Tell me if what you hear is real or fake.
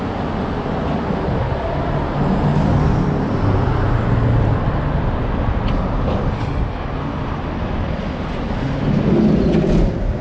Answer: real